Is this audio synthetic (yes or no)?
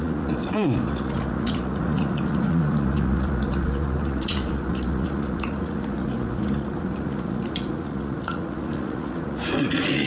yes